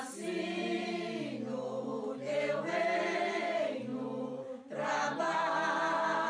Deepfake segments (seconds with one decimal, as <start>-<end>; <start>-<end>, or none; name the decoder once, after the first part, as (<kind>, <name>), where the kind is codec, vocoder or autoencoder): none